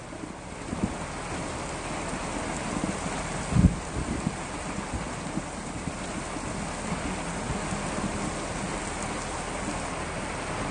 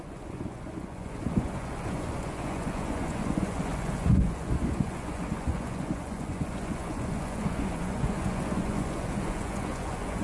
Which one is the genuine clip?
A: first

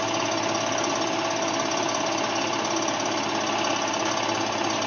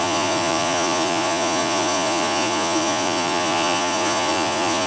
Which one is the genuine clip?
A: first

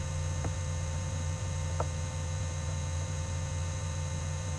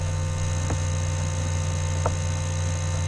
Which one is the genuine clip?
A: second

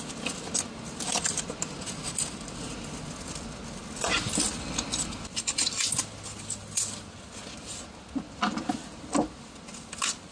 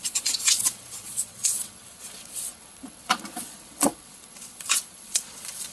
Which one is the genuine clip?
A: first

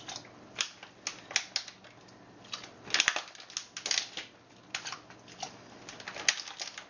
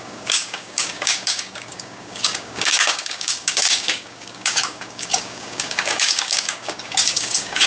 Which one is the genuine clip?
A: first